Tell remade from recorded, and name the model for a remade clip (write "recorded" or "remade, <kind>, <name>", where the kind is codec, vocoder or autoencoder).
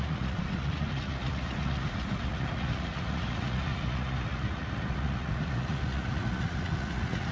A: remade, vocoder, Vocos